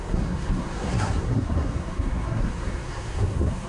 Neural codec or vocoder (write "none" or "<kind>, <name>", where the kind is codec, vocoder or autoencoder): codec, SNAC